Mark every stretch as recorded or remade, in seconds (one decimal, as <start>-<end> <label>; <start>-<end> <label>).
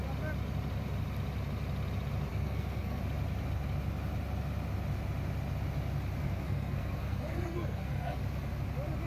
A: 0.0-2.3 recorded; 2.3-3.0 remade; 3.0-6.2 recorded; 6.2-8.2 remade; 8.2-9.1 recorded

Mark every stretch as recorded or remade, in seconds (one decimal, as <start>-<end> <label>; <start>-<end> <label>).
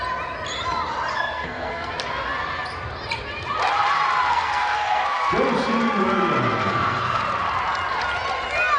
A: 0.0-1.1 recorded; 1.1-1.9 remade; 1.9-4.3 recorded; 4.3-5.3 remade; 5.3-6.6 recorded; 6.6-7.2 remade; 7.2-8.8 recorded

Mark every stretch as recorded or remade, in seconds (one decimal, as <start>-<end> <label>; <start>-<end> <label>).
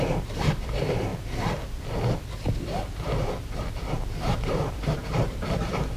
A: 0.0-1.1 remade; 1.1-4.7 recorded; 4.7-6.0 remade